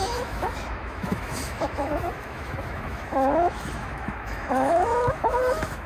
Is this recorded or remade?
remade